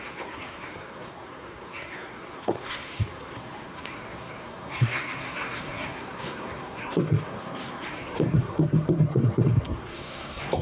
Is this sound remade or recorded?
remade